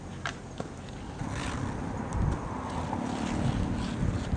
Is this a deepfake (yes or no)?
no